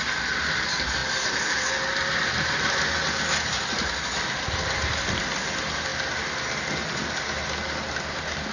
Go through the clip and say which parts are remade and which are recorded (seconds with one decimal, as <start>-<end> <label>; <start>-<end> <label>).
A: 0.0-8.5 recorded